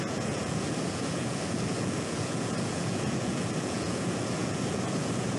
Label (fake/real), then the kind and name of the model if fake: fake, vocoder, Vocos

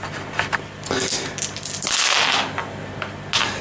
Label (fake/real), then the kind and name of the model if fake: real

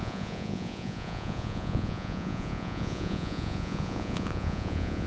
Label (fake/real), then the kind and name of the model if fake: fake, vocoder, Vocos